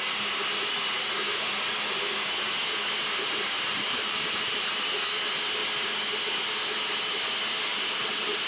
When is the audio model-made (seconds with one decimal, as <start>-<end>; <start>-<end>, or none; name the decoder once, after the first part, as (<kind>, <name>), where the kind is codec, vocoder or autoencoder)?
3.7-4.7 (vocoder, BigVGAN v2); 7.7-8.5